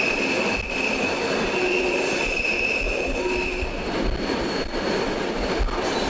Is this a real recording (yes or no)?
yes